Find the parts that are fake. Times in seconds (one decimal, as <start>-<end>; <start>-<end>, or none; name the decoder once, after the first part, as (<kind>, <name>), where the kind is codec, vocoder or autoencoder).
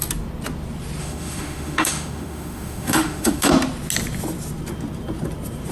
1.0-3.5 (autoencoder, DAC-VAE)